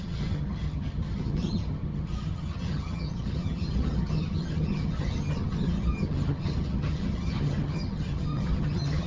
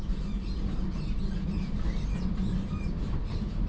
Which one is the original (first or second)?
second